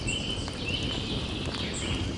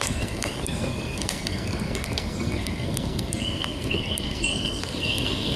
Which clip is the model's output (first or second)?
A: second